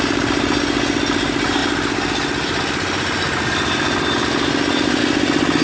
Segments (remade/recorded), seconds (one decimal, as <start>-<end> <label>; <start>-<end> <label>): 0.0-5.6 recorded